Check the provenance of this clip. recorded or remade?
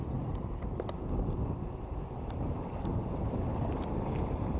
recorded